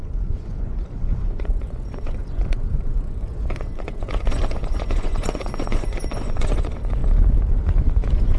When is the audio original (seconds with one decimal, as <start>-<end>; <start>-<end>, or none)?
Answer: 7.0-7.8